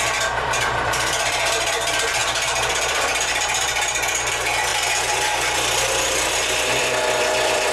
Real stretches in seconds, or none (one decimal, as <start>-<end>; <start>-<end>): none